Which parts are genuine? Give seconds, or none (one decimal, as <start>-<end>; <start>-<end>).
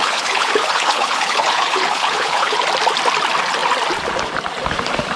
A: 2.6-5.2